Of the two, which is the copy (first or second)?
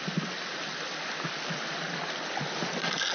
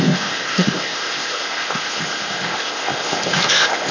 second